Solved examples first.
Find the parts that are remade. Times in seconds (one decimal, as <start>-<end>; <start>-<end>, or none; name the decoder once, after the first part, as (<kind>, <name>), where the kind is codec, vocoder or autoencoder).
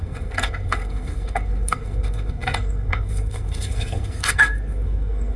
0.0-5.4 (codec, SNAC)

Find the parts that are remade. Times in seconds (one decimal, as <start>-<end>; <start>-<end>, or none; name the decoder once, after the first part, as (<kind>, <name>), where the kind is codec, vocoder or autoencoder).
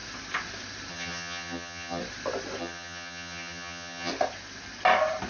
0.9-2.0 (vocoder, HiFi-GAN); 2.6-4.1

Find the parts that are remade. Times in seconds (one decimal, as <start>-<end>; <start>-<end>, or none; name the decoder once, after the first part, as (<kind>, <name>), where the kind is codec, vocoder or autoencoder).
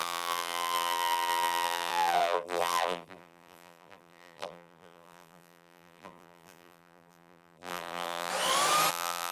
0.0-8.3 (vocoder, BigVGAN v2); 8.9-9.3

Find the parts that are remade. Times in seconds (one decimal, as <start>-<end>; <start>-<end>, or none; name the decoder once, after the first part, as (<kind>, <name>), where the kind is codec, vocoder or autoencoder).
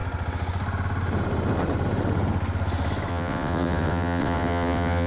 3.1-5.1 (vocoder, WaveNeXt)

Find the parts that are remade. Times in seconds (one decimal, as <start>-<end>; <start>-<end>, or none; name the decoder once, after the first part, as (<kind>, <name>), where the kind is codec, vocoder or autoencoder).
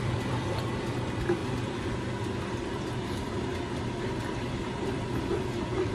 0.0-1.4 (vocoder, BigVGAN v2); 2.4-3.5; 4.1-5.9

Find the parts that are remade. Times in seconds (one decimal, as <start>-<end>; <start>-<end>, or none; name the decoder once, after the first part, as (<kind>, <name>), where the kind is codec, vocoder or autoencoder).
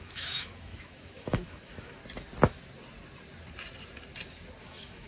0.0-2.0 (autoencoder, DAC-VAE); 4.6-5.1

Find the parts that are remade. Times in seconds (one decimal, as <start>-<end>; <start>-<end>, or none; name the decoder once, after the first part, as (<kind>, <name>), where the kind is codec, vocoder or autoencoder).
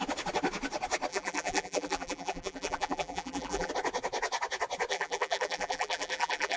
1.1-3.7 (vocoder, BigVGAN v2); 4.9-6.6